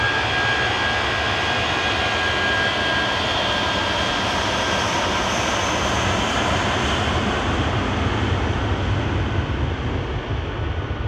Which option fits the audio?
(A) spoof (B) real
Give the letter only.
B